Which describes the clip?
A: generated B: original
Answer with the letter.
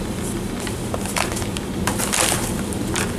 B